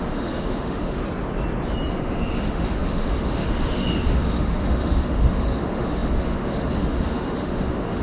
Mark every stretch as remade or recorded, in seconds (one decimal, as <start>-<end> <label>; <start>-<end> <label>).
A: 0.0-1.0 remade; 1.0-1.9 recorded; 1.9-8.0 remade